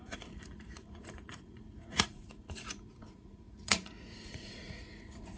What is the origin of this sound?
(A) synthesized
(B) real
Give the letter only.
A